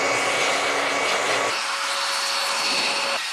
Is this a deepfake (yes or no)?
no